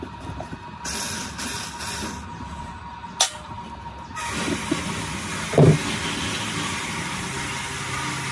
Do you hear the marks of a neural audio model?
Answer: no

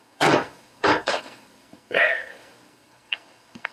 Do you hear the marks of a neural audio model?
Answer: yes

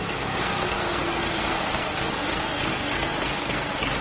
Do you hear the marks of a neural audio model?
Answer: yes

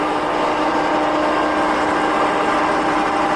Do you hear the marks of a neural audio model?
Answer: no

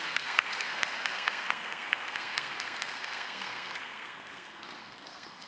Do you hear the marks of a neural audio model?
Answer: yes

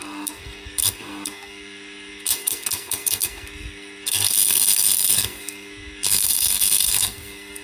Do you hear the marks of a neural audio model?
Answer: yes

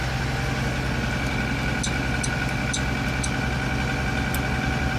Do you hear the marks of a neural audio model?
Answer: no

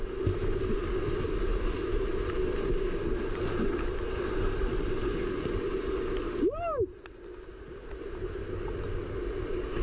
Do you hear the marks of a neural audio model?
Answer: no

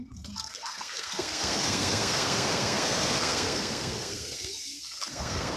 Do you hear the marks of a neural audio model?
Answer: yes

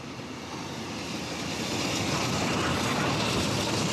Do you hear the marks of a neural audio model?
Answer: no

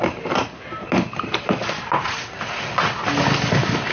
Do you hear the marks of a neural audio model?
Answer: no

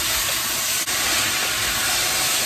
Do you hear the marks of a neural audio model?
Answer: no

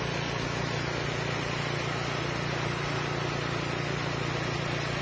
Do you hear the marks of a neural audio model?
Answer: no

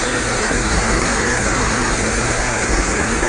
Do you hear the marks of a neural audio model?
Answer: yes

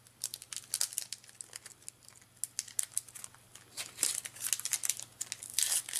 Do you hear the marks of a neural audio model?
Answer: no